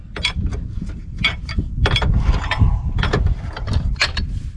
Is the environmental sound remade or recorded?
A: recorded